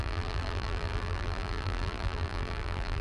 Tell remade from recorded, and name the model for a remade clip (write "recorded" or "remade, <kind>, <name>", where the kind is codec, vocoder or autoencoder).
remade, vocoder, BigVGAN v2